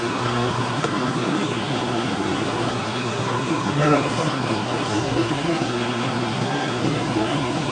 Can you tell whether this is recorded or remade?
remade